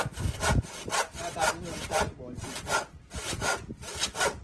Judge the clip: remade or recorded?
recorded